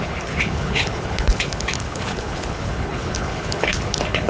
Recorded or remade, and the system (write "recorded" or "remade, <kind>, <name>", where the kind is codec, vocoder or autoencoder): remade, codec, HILCodec